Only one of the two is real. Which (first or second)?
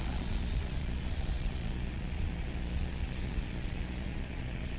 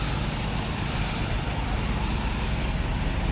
second